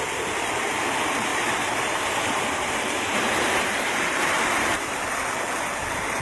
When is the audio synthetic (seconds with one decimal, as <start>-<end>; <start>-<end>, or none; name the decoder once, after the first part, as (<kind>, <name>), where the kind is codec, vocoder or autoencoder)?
1.3-5.0 (vocoder, BigVGAN v2)